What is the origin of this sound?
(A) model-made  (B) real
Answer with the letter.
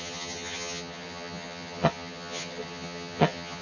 A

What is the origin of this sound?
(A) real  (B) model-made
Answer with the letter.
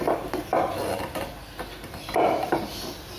A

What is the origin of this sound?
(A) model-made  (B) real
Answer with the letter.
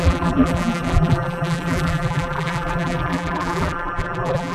A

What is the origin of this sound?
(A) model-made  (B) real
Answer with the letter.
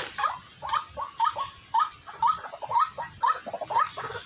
B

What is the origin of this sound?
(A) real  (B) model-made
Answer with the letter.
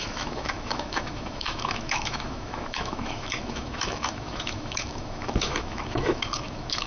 B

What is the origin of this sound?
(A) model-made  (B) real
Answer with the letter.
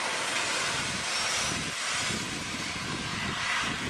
B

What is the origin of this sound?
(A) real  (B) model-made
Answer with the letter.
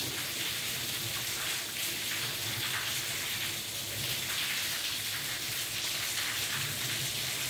A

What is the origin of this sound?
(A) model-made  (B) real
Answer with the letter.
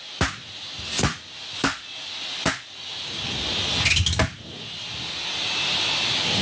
B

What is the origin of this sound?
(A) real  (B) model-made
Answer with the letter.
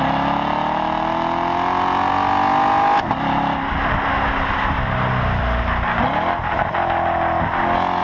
A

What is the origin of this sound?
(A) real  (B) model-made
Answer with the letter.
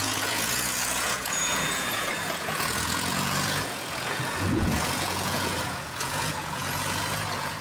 B